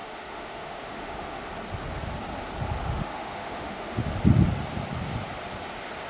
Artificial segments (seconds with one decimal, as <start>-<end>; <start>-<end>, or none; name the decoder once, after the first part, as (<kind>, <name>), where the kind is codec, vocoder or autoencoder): 0.0-1.5 (autoencoder, DAC-VAE); 2.8-4.0